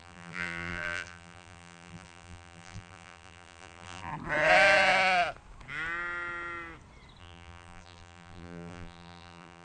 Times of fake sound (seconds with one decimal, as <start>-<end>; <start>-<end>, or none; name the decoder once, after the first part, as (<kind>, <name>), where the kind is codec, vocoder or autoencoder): 0.0-4.1 (vocoder, BigVGAN v2); 7.2-9.6